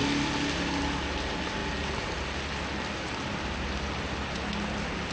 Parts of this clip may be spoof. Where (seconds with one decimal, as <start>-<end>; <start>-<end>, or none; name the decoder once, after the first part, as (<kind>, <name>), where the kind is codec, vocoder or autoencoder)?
none